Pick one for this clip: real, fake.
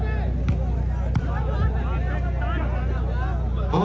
real